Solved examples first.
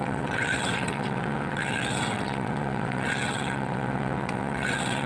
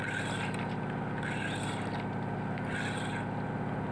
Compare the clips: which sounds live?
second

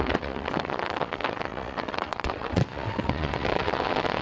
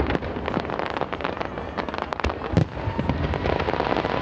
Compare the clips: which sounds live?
second